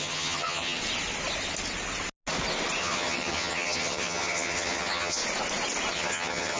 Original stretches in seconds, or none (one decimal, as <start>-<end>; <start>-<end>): 0.8-2.8; 5.2-5.9